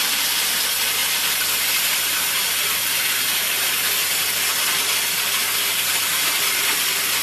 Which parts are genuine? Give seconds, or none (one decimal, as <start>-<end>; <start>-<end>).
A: 0.0-7.2